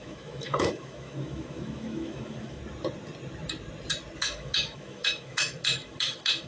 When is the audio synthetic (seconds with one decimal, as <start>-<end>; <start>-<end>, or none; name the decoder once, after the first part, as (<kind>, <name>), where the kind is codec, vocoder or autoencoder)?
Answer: 0.0-2.6 (autoencoder, DAC-VAE); 4.2-6.5